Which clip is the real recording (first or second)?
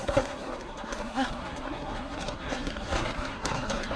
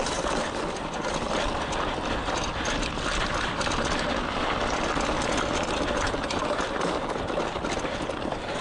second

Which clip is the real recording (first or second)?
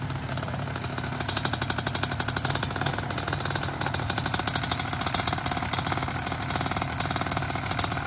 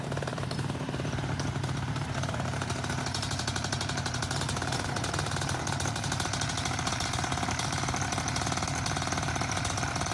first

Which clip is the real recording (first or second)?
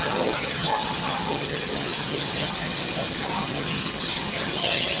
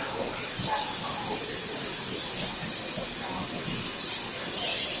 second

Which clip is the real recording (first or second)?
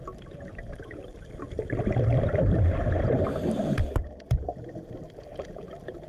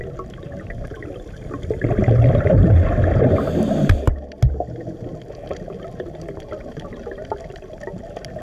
second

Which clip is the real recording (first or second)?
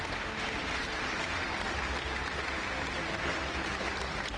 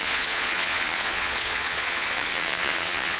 first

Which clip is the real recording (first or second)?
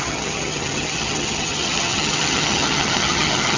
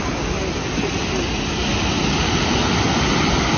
second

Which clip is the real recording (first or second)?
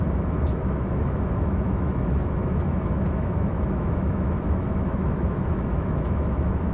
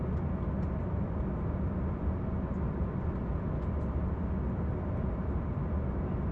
second